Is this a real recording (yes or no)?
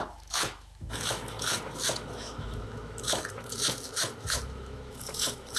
no